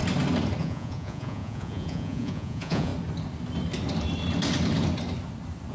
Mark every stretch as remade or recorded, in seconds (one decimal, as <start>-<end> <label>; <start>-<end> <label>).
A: 0.0-0.6 recorded; 0.6-2.9 remade; 2.9-5.7 recorded